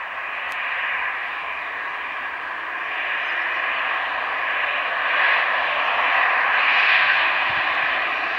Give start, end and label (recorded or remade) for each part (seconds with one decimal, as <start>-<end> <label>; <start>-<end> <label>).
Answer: 0.0-6.6 recorded; 6.6-7.2 remade; 7.2-8.4 recorded